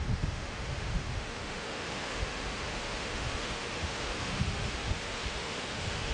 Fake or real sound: fake